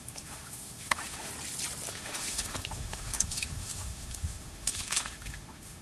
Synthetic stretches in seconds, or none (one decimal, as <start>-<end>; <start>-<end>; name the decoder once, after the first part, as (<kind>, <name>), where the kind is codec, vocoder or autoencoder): 0.0-1.3 (autoencoder, DAC-VAE); 1.9-5.8